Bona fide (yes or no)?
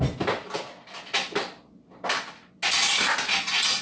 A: yes